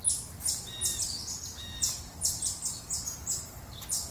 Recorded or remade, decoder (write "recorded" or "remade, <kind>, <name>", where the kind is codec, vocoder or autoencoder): recorded